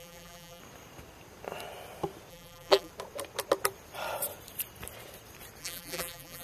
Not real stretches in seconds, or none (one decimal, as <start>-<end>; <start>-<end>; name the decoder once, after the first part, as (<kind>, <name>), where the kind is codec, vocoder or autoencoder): 0.0-0.6 (vocoder, BigVGAN v2); 2.3-2.9; 5.6-6.4